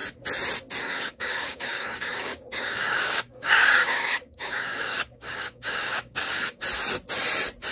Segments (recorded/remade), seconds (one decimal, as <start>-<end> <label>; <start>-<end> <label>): 0.0-0.8 recorded; 0.8-6.6 remade; 6.6-7.7 recorded

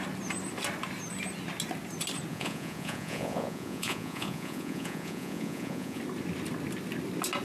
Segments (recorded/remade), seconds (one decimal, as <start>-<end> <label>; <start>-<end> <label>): 0.0-2.3 recorded; 2.3-6.0 remade; 6.0-7.4 recorded